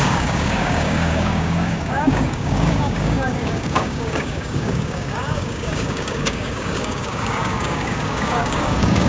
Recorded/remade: remade